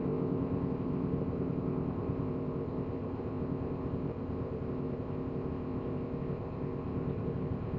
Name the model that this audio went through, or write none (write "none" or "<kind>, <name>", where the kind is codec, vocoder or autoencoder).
codec, ZipCodec